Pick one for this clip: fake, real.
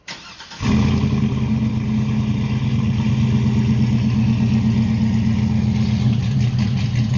real